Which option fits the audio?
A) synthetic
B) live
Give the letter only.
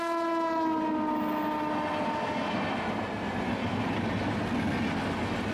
B